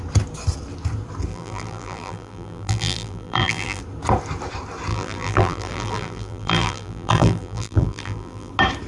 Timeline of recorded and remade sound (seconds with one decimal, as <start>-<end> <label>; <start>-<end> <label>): 0.0-1.3 recorded; 1.3-3.8 remade; 3.8-4.9 recorded; 4.9-8.5 remade; 8.5-8.9 recorded

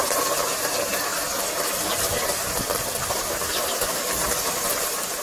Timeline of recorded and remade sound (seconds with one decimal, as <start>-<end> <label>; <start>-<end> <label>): 0.0-1.1 remade; 1.1-4.2 recorded; 4.2-5.2 remade

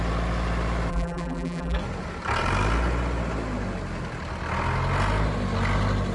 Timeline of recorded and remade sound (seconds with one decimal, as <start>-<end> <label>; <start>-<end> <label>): 0.0-0.9 recorded; 0.9-1.8 remade; 1.8-6.1 recorded

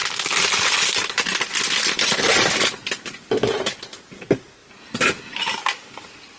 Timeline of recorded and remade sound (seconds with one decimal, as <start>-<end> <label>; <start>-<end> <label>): 0.0-4.6 recorded; 4.6-6.0 remade; 6.0-6.4 recorded